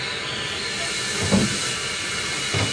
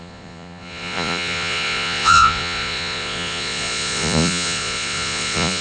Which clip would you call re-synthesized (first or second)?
second